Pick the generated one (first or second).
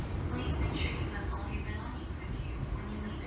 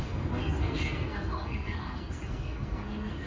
second